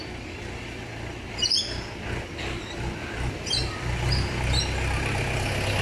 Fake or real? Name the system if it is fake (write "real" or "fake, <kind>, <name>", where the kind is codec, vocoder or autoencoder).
real